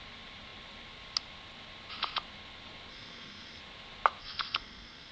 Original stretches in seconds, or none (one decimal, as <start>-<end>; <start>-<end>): 0.0-2.9; 3.6-4.2